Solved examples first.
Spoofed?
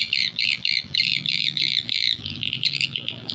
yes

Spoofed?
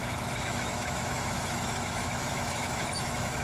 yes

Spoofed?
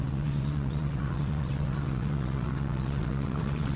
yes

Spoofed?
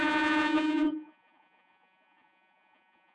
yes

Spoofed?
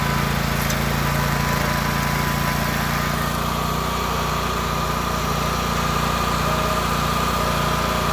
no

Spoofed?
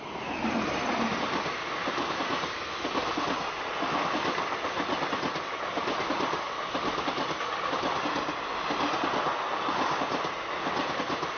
no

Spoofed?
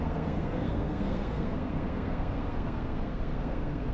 yes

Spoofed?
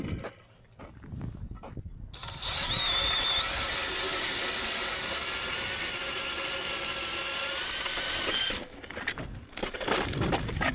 no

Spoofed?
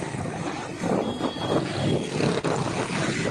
no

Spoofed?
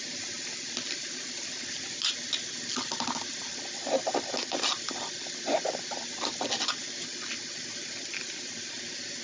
no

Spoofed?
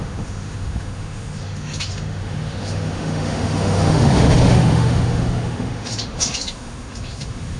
yes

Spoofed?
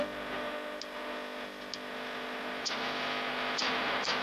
no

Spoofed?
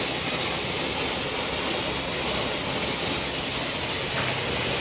no